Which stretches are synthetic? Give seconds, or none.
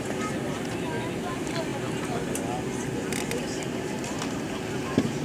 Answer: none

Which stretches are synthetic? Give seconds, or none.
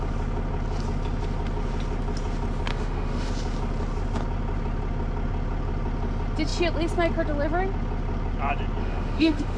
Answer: 2.7-3.3 (autoencoder, DAC-VAE); 8.8-9.6